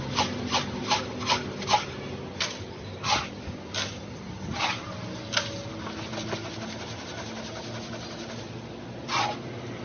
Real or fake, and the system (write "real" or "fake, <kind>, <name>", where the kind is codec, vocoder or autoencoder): real